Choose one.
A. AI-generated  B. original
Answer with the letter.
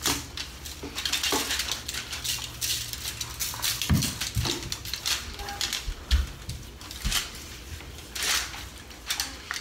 B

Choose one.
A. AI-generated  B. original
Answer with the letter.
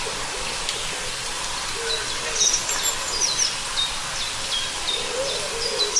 B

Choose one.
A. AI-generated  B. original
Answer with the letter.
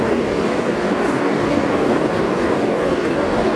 A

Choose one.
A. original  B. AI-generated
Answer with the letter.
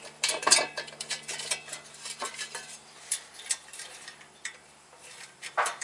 B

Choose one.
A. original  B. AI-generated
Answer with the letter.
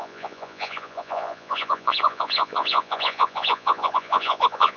B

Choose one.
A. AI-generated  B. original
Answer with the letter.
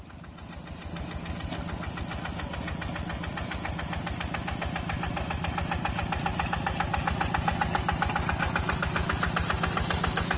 B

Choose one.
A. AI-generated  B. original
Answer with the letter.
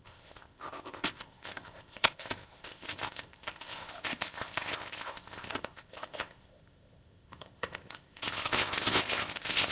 A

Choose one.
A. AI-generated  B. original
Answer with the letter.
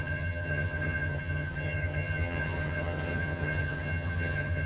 A